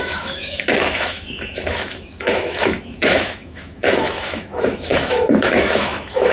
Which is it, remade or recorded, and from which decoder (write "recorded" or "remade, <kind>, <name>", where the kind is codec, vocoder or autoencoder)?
remade, autoencoder, DAC-VAE